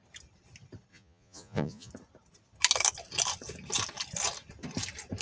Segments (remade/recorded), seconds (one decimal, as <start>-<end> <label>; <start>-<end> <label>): 0.0-0.9 recorded; 0.9-1.9 remade; 1.9-5.2 recorded